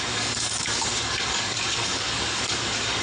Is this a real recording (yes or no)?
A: no